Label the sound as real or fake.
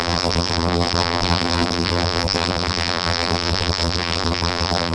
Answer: fake